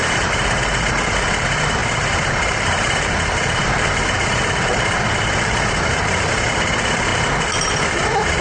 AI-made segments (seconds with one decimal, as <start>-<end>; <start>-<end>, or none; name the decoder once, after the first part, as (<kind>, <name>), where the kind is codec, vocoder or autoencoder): 0.0-7.1 (vocoder, BigVGAN v2); 7.9-8.4